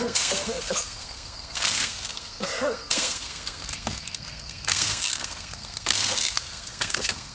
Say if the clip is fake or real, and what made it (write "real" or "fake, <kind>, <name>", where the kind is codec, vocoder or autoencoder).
fake, codec, SNAC